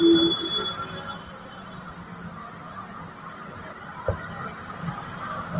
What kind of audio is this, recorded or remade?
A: recorded